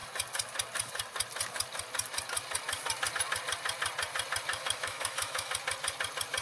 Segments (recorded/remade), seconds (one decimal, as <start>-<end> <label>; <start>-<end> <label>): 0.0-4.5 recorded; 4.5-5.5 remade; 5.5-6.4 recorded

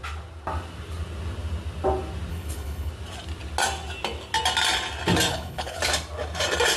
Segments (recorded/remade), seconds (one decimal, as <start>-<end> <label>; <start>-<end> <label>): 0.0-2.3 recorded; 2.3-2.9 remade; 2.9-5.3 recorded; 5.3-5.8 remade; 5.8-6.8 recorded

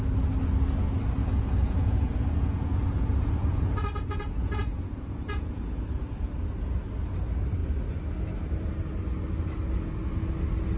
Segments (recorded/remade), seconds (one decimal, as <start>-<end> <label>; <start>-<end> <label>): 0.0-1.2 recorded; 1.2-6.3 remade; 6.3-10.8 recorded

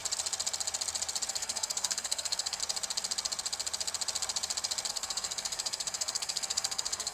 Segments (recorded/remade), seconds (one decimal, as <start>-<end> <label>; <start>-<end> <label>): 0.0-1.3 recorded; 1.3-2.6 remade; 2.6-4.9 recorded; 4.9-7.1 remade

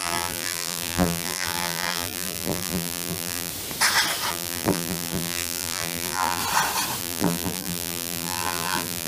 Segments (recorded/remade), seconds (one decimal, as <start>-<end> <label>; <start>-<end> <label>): 0.0-3.5 remade; 3.5-4.3 recorded; 4.3-6.4 remade; 6.4-7.0 recorded; 7.0-9.1 remade

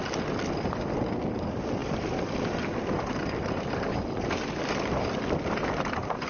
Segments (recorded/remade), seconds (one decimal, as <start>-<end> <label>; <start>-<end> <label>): 0.0-1.8 recorded; 1.8-4.7 remade; 4.7-6.3 recorded